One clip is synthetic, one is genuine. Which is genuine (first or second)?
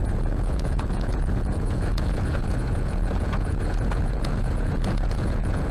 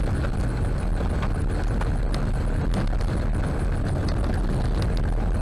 second